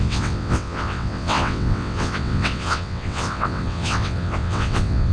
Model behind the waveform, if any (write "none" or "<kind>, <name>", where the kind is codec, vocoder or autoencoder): vocoder, WaveNeXt